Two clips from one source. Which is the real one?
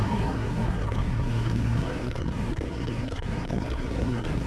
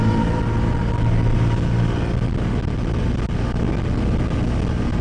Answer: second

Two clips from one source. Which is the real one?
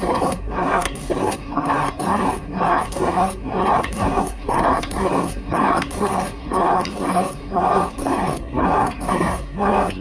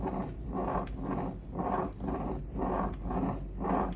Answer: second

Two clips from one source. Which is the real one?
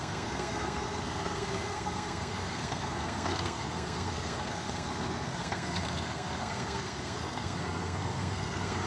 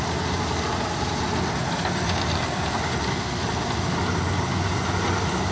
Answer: second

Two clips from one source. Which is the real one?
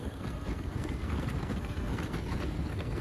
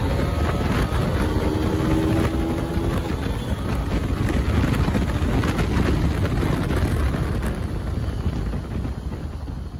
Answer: second